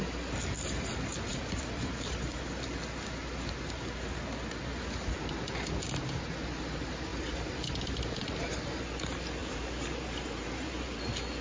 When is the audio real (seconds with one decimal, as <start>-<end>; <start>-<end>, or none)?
0.0-1.3; 2.3-9.4; 11.0-11.4